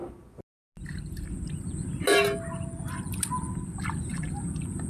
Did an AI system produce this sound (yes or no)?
no